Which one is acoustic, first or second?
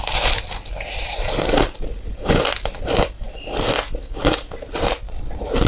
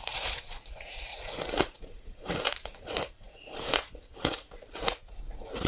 first